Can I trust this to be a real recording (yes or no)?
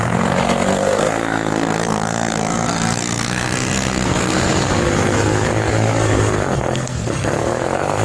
no